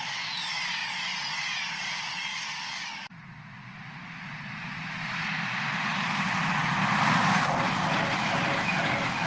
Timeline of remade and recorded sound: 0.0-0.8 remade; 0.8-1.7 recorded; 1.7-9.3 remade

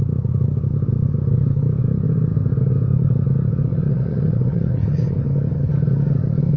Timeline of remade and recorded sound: 0.0-3.7 recorded; 3.7-5.2 remade; 5.2-6.6 recorded

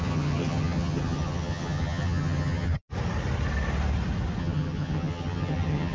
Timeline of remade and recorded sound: 0.0-2.8 remade; 2.8-4.4 recorded; 4.4-5.9 remade

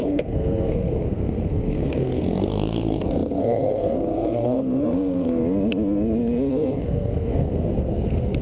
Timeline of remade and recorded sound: 0.0-5.4 remade; 5.4-6.5 recorded; 6.5-8.4 remade

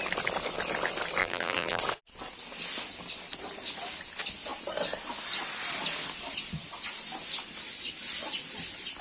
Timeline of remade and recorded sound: 0.0-1.2 recorded; 1.2-1.8 remade; 1.8-9.0 recorded

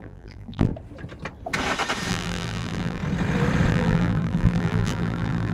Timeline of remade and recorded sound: 0.0-0.7 remade; 0.7-2.1 recorded; 2.1-3.0 remade; 3.0-3.7 recorded; 3.7-5.5 remade